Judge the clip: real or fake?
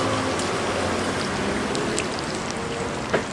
real